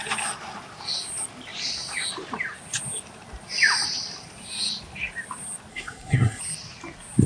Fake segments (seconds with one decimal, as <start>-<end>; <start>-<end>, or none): 5.7-6.4